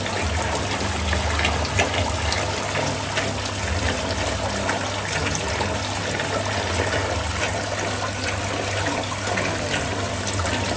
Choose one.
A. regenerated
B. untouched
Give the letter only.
B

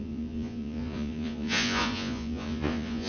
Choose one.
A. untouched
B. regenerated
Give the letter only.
B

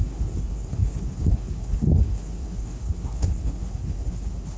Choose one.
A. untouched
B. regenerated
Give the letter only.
B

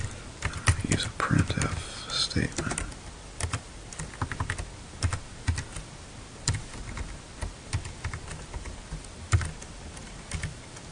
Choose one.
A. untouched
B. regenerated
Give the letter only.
A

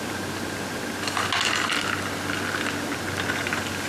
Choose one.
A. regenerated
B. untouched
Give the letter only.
B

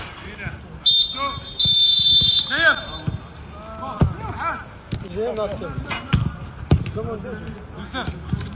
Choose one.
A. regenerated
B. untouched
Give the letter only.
B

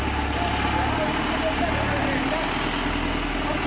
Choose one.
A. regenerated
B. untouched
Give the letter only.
B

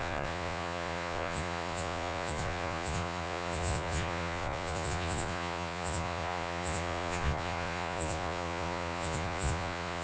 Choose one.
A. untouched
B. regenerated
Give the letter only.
B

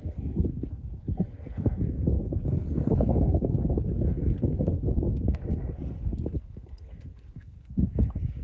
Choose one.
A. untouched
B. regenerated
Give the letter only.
B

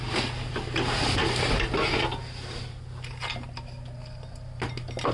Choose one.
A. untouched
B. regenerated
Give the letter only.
A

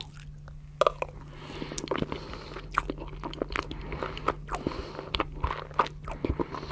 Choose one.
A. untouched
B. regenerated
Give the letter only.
A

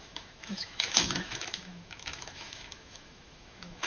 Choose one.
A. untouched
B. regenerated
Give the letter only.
B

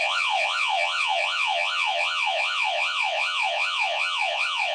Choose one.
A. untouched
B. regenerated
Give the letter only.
B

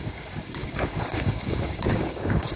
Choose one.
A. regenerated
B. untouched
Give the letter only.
A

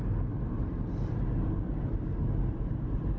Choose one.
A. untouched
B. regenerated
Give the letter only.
A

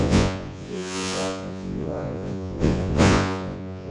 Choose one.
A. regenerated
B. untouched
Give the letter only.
A